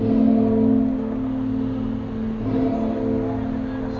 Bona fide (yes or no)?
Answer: yes